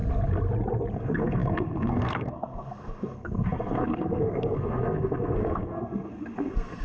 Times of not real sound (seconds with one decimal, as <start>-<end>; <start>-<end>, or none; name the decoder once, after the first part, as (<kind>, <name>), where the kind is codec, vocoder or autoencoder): 0.9-6.8 (codec, SNAC)